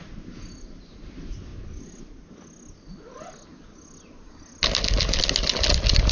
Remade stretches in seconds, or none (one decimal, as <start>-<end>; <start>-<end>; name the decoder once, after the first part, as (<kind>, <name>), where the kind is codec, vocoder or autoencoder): none